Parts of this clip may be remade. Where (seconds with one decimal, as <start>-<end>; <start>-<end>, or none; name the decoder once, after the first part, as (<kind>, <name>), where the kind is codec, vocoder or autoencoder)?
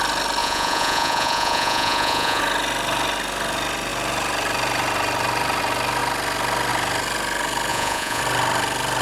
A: 0.4-2.4 (vocoder, Vocos); 7.7-8.2